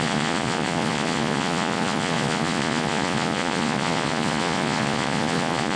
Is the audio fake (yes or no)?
yes